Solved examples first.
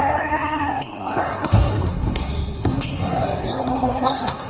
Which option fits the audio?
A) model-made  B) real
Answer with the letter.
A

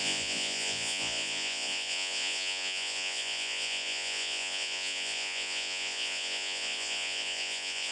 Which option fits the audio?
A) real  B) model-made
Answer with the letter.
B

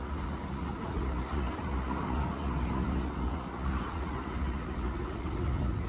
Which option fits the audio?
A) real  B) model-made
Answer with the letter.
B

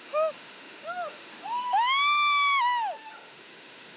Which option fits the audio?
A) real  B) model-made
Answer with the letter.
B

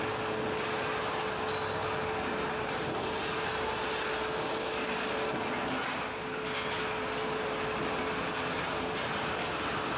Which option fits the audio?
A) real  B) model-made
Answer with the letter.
A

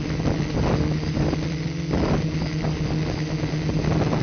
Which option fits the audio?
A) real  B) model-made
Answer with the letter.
A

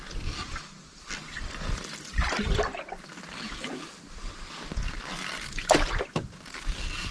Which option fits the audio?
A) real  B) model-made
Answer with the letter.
B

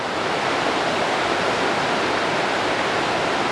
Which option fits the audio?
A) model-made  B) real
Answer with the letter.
B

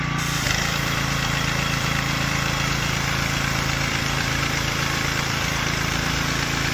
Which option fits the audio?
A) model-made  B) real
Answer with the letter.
A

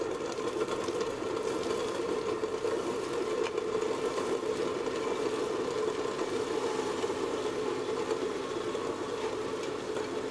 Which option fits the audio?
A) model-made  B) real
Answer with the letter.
B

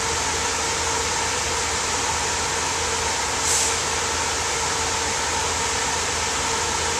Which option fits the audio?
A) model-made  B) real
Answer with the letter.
B